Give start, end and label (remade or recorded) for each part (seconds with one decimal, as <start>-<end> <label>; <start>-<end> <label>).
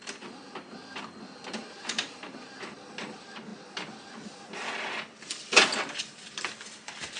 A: 0.0-1.6 recorded; 1.6-2.6 remade; 2.6-7.2 recorded